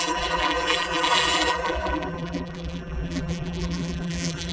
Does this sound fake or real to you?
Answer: fake